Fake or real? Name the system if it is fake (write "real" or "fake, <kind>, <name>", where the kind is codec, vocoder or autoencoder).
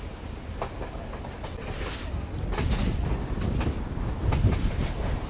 real